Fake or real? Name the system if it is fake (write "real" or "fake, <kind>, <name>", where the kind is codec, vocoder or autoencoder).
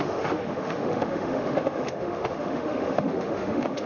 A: fake, autoencoder, DAC-VAE